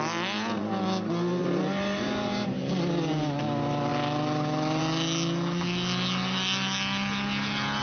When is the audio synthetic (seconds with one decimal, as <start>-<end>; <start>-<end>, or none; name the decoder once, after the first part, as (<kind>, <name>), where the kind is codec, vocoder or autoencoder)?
1.4-2.6 (vocoder, BigVGAN v2)